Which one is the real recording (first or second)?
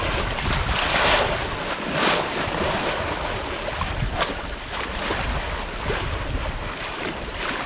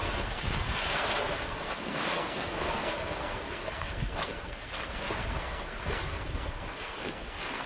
first